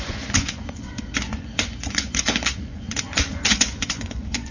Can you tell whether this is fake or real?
fake